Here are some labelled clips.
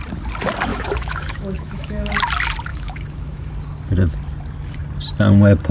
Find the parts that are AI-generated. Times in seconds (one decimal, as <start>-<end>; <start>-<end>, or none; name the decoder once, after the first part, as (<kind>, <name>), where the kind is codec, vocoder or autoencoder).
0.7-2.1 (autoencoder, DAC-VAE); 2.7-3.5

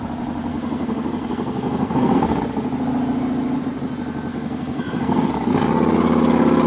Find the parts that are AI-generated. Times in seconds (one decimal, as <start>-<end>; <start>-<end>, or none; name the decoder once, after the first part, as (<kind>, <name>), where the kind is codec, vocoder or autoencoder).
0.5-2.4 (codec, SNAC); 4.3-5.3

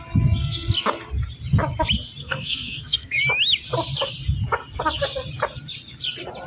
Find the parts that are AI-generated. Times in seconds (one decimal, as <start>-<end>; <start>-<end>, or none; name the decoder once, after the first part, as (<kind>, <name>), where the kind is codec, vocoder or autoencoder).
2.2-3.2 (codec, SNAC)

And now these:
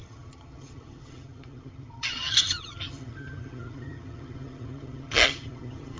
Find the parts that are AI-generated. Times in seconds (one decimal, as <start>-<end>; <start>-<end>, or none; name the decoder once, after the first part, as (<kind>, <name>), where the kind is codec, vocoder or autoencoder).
0.0-6.0 (vocoder, HiFi-GAN)

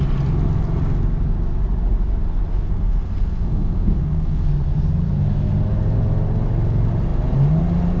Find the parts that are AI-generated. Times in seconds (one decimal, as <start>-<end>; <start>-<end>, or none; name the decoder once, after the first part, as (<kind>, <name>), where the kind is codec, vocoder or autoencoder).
2.5-4.5 (codec, SNAC)

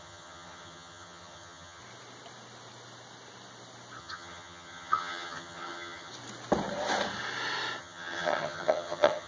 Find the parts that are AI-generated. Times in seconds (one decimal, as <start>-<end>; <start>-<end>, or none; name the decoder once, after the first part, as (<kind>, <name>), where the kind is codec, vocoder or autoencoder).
0.0-1.8 (vocoder, HiFi-GAN); 4.0-6.1; 7.8-9.3